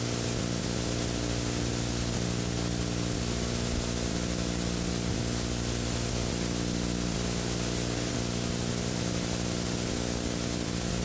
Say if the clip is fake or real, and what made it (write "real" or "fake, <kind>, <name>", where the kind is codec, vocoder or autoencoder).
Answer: real